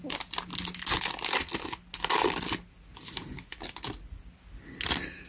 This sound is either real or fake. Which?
real